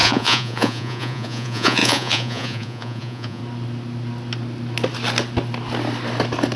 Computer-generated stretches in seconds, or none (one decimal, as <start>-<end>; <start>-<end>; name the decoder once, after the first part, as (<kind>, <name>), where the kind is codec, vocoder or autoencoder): 0.0-3.4 (vocoder, Vocos)